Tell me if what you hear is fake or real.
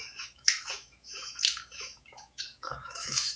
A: fake